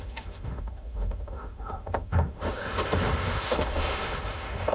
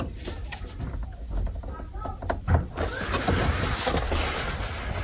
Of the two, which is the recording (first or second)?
second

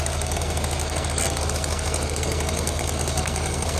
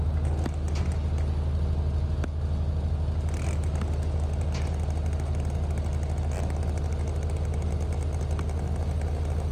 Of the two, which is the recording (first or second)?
second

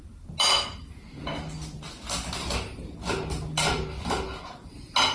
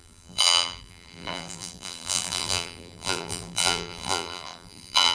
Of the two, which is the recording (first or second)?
first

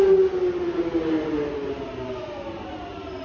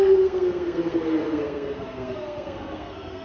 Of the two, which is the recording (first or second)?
first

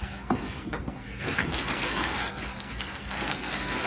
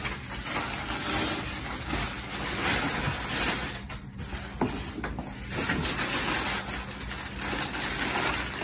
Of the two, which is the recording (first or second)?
second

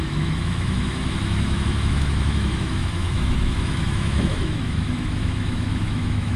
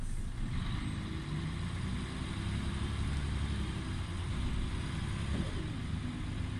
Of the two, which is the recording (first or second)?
second